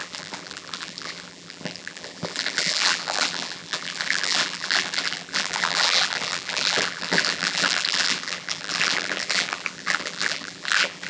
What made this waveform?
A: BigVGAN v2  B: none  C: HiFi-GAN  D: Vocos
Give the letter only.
A